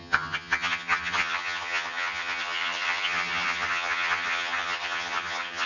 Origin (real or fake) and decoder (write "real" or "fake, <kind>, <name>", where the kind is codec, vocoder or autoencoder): fake, vocoder, HiFi-GAN